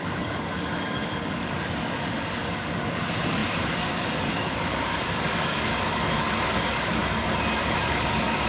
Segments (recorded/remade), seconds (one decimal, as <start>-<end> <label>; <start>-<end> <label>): 0.0-7.0 remade; 7.0-7.6 recorded; 7.6-8.5 remade